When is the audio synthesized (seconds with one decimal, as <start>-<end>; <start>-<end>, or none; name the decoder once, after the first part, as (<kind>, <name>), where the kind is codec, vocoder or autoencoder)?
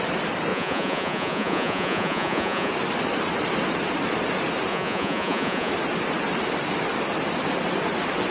0.5-2.7 (vocoder, Vocos); 4.7-5.7